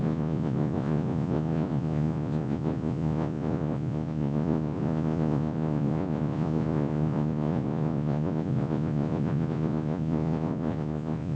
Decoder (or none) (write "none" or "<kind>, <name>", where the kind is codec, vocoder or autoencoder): vocoder, Vocos